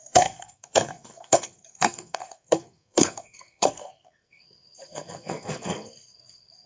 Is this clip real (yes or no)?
no